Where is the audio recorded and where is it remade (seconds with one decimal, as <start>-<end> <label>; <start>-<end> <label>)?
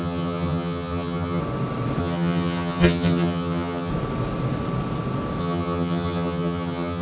0.0-1.4 remade; 1.4-2.0 recorded; 2.0-3.9 remade; 3.9-5.4 recorded; 5.4-7.0 remade